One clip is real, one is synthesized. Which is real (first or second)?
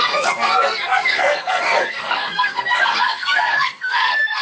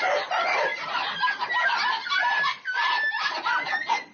second